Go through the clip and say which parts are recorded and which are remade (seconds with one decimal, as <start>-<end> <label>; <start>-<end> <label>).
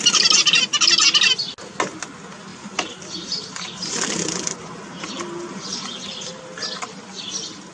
0.0-2.5 recorded; 2.5-5.2 remade; 5.2-7.7 recorded